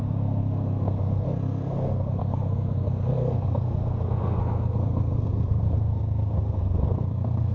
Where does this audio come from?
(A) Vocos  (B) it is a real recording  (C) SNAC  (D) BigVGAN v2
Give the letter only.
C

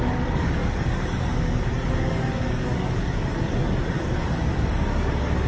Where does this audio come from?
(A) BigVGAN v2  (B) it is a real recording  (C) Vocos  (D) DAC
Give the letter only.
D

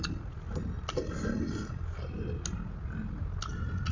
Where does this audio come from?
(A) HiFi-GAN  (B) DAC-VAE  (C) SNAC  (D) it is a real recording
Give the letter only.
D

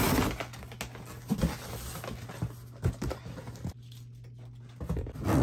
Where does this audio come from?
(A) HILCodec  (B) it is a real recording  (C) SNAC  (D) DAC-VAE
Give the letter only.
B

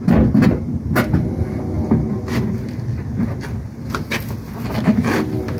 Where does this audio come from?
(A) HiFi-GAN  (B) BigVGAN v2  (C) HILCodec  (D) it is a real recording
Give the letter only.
D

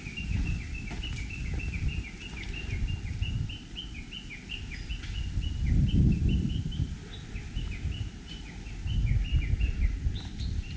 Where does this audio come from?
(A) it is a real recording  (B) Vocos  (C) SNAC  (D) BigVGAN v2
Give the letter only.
A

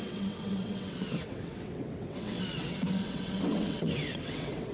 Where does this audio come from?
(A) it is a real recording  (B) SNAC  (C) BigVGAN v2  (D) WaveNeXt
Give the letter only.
D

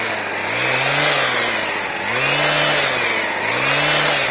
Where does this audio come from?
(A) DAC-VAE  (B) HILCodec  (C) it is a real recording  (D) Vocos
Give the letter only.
C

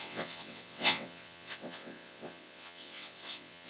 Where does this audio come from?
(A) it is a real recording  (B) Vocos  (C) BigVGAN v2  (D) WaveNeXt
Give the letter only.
D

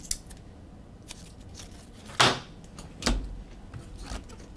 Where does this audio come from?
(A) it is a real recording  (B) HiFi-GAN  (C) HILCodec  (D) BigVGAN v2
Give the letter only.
A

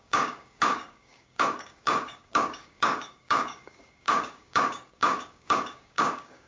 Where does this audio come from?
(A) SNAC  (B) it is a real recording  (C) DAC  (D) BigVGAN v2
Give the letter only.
C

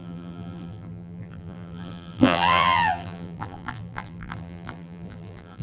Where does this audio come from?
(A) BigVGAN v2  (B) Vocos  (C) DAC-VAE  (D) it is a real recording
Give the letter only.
A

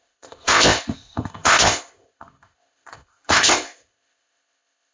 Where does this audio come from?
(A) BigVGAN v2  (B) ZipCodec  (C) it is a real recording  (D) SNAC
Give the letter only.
B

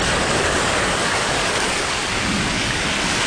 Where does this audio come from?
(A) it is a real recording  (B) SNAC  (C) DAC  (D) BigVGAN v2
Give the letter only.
C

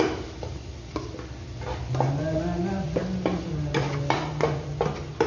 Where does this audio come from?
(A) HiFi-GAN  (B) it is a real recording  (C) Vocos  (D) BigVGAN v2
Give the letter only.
B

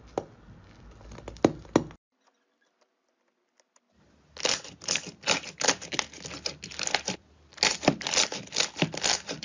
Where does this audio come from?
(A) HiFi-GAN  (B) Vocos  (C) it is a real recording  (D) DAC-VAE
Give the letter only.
C